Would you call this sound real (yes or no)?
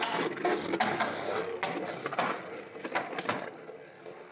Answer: yes